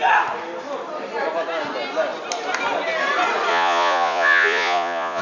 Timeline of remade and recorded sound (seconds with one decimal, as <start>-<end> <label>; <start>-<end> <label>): 0.0-3.5 recorded; 3.5-5.2 remade